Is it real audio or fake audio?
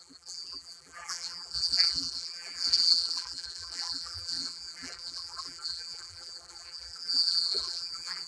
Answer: fake